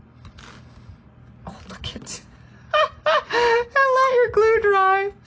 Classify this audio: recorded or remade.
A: recorded